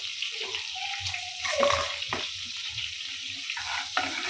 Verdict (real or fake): fake